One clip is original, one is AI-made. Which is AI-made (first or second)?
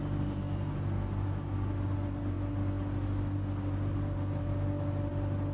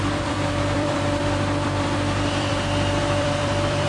second